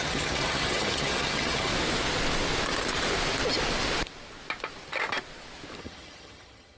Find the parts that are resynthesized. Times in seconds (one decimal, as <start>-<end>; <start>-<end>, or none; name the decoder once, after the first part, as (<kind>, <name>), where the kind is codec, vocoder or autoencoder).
0.0-1.7 (vocoder, HiFi-GAN); 5.8-6.8

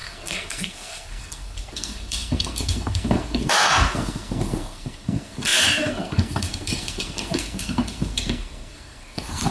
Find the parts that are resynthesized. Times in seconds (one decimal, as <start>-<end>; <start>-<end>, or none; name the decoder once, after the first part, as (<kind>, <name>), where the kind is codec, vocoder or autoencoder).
0.0-9.5 (codec, SNAC)

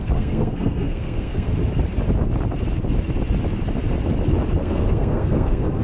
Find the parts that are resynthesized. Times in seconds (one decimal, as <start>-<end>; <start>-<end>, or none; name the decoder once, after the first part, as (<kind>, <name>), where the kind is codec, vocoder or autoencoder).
0.0-1.5 (codec, SNAC); 4.6-5.8

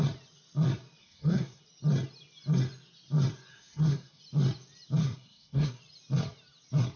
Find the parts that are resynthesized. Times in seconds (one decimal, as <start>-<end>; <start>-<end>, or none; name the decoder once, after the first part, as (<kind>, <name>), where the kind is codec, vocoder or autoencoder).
1.0-1.6 (codec, SNAC); 3.5-4.2; 5.0-5.8

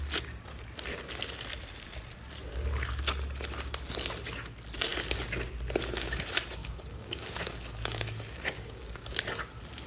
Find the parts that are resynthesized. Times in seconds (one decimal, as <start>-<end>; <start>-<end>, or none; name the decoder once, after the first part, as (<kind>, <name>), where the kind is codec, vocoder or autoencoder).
6.6-9.2 (codec, DAC)